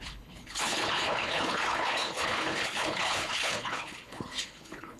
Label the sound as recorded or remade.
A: remade